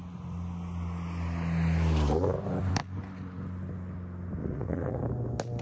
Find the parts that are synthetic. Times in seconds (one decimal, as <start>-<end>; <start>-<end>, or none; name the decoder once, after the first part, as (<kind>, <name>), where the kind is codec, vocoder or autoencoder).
4.4-5.0 (vocoder, Vocos)